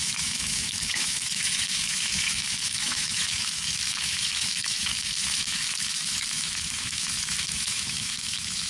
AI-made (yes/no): yes